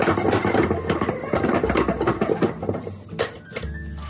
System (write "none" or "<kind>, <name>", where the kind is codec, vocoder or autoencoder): none